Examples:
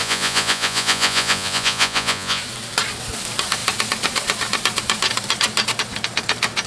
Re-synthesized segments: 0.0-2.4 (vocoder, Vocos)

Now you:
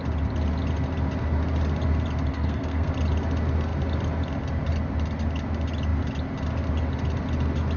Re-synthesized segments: 2.3-2.9 (codec, SNAC)

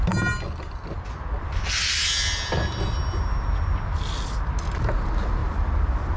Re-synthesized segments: none

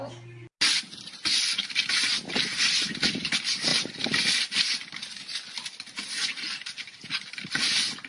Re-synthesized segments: none